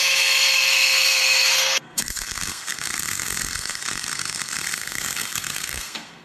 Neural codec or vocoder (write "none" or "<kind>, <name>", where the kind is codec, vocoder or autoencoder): codec, SNAC